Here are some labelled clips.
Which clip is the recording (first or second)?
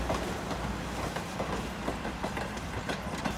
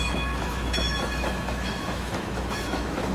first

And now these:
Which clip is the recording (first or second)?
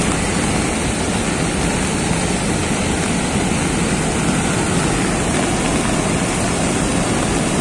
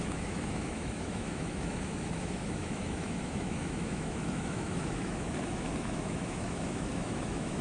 first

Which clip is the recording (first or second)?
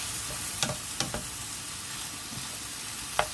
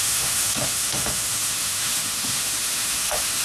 first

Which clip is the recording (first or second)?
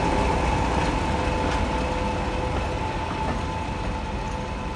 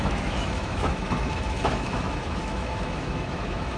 first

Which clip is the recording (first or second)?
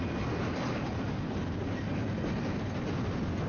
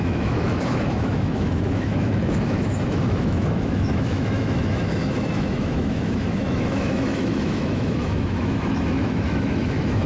first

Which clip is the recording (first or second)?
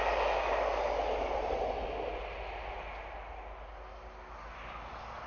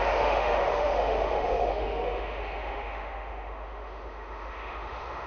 first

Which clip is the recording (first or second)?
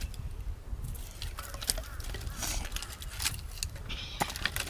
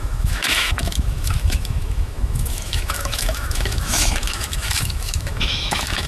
first